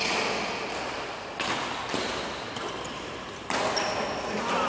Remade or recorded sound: recorded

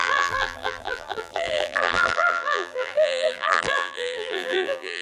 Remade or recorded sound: remade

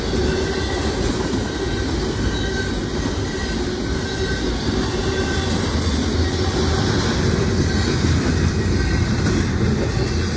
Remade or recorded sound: recorded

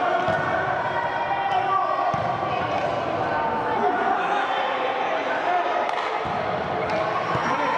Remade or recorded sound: recorded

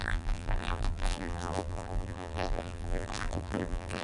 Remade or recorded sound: remade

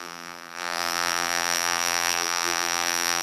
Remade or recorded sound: remade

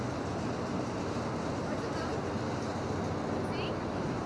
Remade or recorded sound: recorded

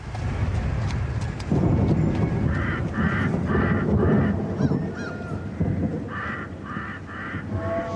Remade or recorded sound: recorded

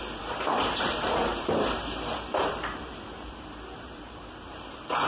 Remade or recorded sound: remade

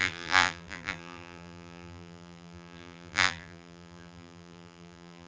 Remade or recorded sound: remade